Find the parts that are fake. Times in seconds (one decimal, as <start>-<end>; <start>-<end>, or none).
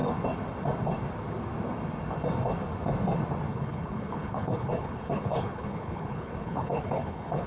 3.5-7.5